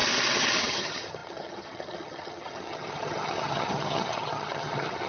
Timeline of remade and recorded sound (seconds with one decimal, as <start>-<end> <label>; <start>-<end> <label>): 0.0-0.6 recorded; 0.6-5.1 remade